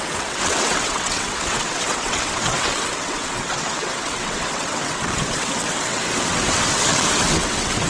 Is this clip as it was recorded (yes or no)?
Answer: no